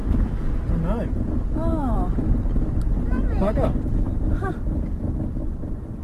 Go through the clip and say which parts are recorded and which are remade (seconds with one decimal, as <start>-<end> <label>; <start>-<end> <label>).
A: 0.0-0.7 remade; 0.7-1.7 recorded; 1.7-4.5 remade; 4.5-5.4 recorded; 5.4-6.0 remade